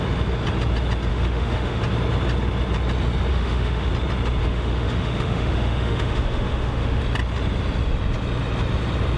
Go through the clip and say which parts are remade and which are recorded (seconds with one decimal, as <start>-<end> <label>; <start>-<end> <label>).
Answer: 0.0-1.1 recorded; 1.1-1.8 remade; 1.8-3.3 recorded; 3.3-3.9 remade; 3.9-4.4 recorded; 4.4-7.0 remade; 7.0-9.2 recorded